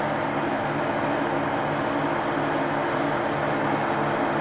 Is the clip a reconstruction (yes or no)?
no